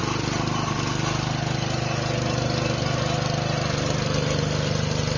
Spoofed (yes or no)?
no